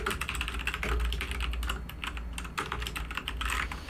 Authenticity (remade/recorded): recorded